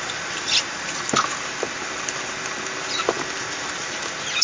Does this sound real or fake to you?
real